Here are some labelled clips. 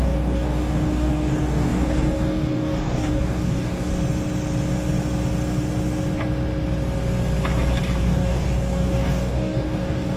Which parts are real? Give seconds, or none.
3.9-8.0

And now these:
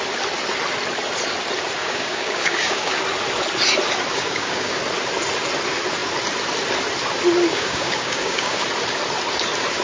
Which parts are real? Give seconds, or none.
0.0-1.8; 3.0-4.1; 4.8-7.5; 8.6-9.8

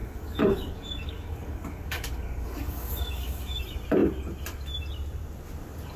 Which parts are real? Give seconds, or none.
3.6-6.0